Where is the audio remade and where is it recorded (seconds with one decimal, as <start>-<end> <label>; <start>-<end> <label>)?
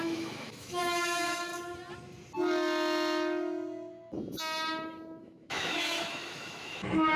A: 0.0-1.5 remade; 1.5-5.2 recorded; 5.2-7.2 remade